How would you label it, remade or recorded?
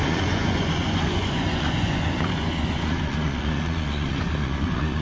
remade